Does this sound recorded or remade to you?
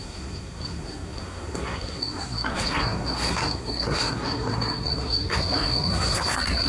remade